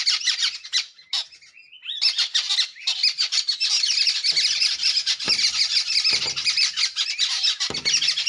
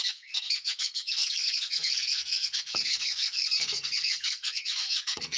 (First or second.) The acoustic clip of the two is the first